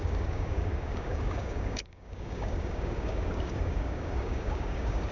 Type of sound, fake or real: fake